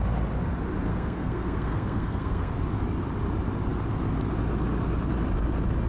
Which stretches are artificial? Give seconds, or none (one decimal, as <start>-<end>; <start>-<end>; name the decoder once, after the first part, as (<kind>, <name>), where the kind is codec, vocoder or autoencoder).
0.9-2.5 (codec, SNAC)